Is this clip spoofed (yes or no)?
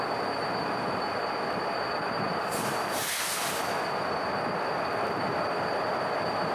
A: no